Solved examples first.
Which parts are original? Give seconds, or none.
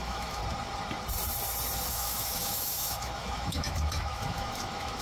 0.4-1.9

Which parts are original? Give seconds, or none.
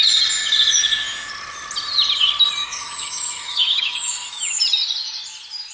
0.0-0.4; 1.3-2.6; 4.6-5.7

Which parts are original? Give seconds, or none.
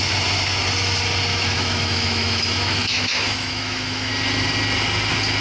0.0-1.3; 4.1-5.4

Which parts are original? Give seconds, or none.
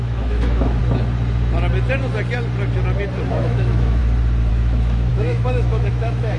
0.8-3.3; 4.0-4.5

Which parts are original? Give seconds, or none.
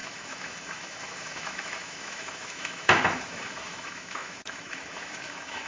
none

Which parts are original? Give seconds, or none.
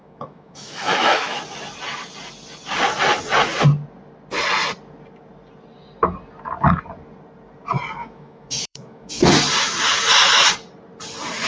1.4-8.0; 9.3-11.5